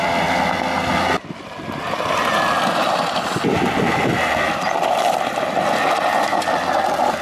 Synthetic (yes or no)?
no